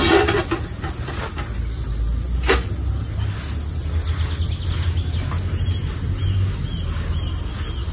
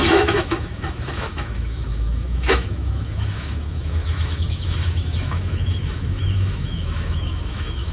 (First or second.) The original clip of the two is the first